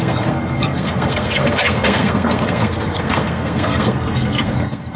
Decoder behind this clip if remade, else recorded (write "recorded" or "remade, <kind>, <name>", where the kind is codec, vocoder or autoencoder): remade, codec, SNAC